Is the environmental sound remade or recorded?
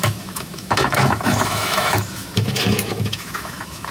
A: remade